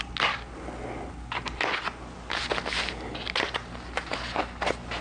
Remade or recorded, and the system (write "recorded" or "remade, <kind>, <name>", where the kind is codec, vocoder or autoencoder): recorded